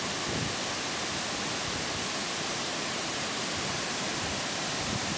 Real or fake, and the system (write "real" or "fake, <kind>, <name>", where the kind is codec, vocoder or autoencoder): real